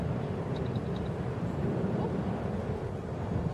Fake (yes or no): yes